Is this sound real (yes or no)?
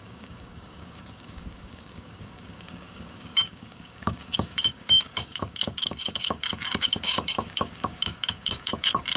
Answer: no